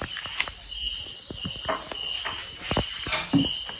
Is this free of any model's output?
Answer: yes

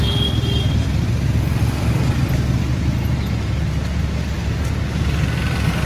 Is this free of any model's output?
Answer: yes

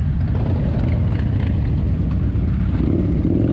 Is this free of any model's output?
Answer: yes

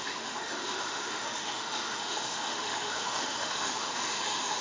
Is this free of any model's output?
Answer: no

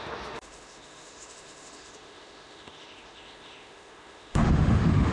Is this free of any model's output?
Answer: no